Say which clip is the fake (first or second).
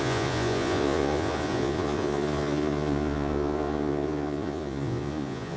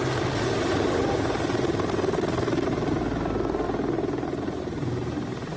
first